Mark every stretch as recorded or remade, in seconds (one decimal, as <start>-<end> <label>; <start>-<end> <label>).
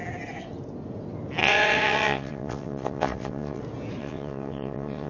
0.0-1.4 recorded; 1.4-3.6 remade; 3.6-4.0 recorded; 4.0-5.1 remade